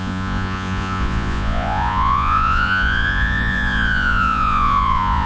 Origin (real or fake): fake